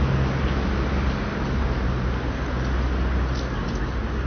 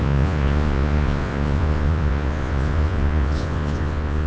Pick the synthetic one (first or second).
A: second